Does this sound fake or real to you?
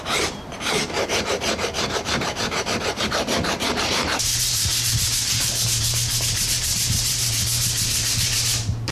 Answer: fake